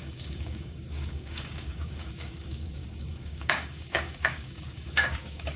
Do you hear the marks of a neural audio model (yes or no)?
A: yes